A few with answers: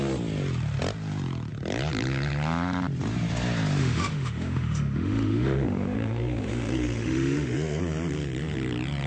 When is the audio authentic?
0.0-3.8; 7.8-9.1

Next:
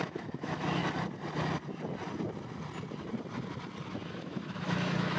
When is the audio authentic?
0.8-3.9